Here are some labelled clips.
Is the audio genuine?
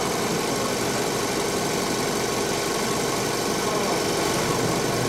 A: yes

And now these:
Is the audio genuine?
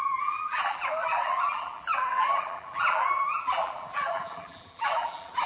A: no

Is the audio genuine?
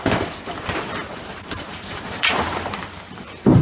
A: no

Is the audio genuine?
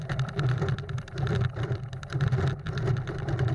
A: no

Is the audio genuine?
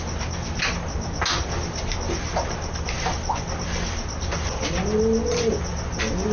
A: yes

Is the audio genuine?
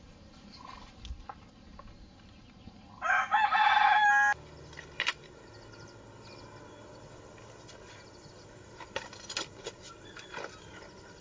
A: yes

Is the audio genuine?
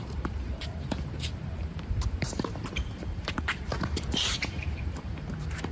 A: no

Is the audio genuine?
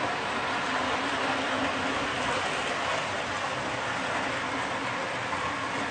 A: yes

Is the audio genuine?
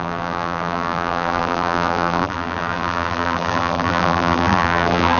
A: no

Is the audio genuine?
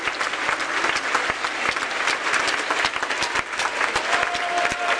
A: yes